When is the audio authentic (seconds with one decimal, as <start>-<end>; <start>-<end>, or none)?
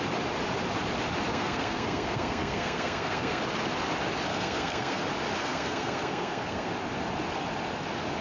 0.0-1.3; 3.4-4.3; 5.0-5.4; 6.7-8.2